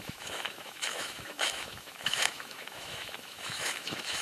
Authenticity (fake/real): fake